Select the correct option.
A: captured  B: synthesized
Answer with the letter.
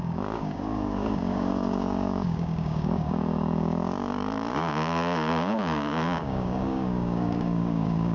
B